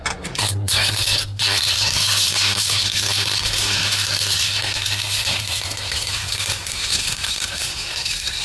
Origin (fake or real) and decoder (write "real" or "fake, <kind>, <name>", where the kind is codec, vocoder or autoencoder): fake, codec, SNAC